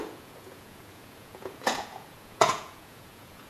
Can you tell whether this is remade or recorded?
remade